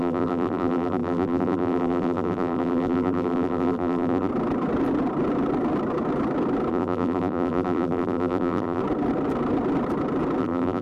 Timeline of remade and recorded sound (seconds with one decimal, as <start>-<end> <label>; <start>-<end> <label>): 0.0-4.3 remade; 4.3-6.7 recorded; 6.7-8.8 remade; 8.8-10.4 recorded; 10.4-10.8 remade